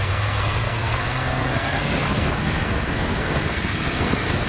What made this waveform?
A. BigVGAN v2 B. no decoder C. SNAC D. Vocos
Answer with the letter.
C